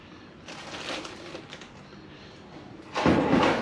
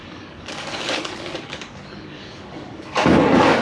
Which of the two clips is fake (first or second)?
second